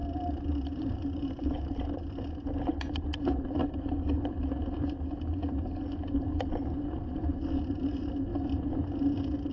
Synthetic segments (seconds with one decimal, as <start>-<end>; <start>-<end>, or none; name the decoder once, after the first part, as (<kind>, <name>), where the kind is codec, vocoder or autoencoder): 0.0-8.3 (vocoder, BigVGAN v2)